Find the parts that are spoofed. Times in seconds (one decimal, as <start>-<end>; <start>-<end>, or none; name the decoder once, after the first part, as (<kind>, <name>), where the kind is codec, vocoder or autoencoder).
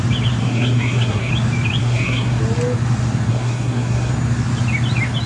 0.4-1.3 (codec, SNAC); 1.8-2.4; 3.3-4.1